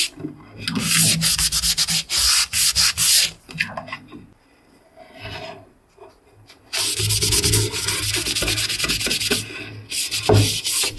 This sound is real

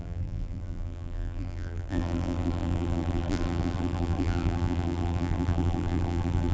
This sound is fake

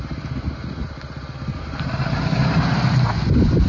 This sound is real